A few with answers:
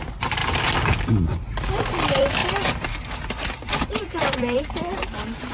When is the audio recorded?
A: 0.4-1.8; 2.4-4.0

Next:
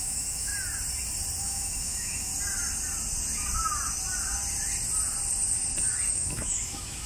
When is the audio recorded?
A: 0.5-1.4; 2.3-6.1